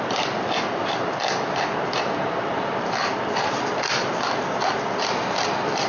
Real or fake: real